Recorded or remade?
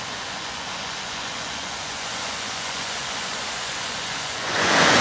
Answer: remade